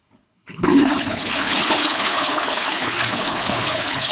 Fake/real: fake